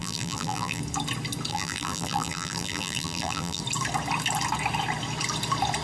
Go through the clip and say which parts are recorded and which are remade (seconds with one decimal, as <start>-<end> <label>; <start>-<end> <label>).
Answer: 0.0-0.8 remade; 0.8-1.5 recorded; 1.5-3.6 remade; 3.6-5.8 recorded